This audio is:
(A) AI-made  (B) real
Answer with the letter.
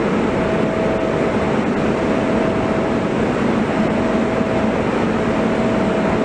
B